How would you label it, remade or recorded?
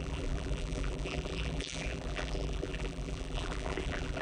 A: remade